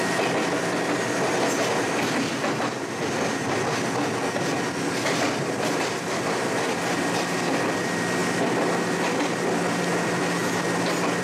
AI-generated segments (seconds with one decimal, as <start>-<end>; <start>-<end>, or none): none